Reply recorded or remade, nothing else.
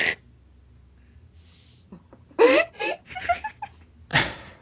recorded